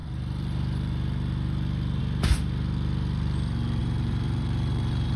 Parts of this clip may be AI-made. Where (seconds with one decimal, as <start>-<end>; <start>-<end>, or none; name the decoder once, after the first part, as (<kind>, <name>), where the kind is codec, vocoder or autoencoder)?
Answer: 3.8-5.2 (vocoder, BigVGAN v2)